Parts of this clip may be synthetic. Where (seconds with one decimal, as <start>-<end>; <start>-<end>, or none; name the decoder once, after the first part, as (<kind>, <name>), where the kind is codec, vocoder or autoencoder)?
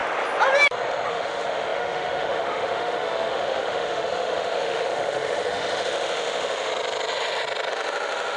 1.1-6.7 (autoencoder, DAC-VAE); 7.7-8.4